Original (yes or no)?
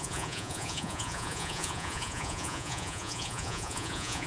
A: no